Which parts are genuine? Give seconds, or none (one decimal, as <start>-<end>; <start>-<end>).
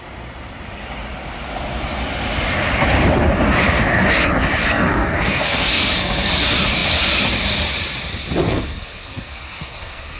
0.0-4.6; 6.3-8.4